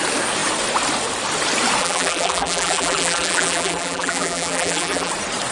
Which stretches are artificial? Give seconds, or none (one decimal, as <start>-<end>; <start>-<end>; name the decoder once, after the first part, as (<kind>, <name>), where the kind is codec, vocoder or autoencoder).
1.8-5.1 (vocoder, BigVGAN v2)